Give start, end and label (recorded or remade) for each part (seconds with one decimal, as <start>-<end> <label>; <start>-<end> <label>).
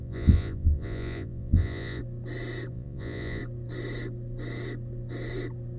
0.0-2.0 remade; 2.0-2.7 recorded; 2.7-3.4 remade; 3.4-5.8 recorded